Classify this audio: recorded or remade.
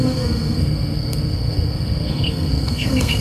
remade